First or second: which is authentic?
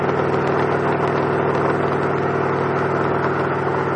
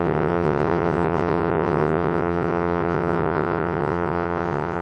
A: first